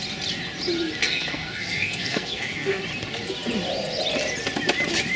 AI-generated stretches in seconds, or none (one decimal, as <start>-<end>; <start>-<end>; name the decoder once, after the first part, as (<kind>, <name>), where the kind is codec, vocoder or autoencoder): 1.0-2.8 (codec, SNAC)